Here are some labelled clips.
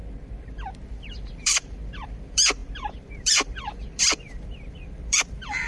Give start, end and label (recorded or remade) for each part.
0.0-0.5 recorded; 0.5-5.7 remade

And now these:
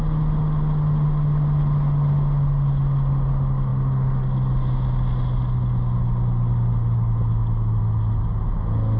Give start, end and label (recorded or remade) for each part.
0.0-9.0 recorded